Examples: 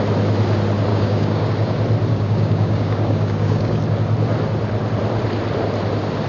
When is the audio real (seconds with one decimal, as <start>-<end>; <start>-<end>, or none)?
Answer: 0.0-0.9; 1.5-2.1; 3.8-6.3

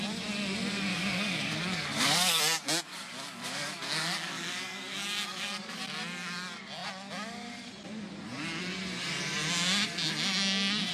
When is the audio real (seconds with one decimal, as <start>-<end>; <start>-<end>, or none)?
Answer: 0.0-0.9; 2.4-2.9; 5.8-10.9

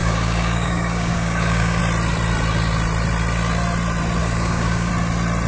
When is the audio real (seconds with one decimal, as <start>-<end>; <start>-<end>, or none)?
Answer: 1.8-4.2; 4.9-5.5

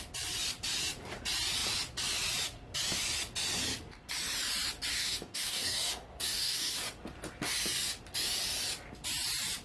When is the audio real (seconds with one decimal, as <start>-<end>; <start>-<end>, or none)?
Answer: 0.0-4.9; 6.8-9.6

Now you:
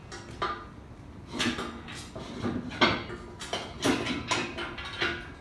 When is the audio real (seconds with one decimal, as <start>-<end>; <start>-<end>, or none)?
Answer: 0.0-5.4

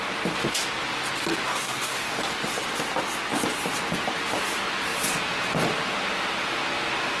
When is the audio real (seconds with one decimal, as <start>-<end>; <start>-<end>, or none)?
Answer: 0.0-1.5; 2.2-7.2

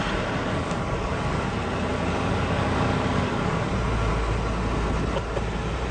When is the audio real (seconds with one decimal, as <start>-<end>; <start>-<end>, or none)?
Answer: 0.0-0.4; 1.5-1.9; 3.7-5.9

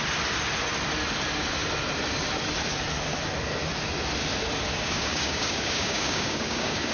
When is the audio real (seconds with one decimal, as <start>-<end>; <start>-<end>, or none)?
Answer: 0.0-4.7